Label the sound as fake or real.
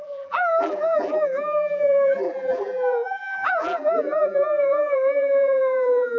fake